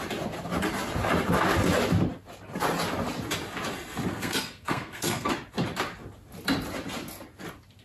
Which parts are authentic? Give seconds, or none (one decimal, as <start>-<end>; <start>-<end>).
0.0-4.1; 5.3-7.8

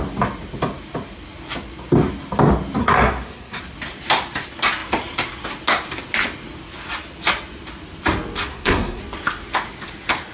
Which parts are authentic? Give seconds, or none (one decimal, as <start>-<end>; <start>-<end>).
0.0-2.8; 3.6-8.5; 9.0-10.3